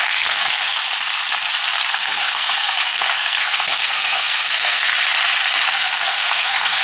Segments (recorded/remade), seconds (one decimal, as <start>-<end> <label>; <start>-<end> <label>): 0.0-0.8 remade; 0.8-1.9 recorded; 1.9-4.9 remade; 4.9-5.7 recorded; 5.7-6.8 remade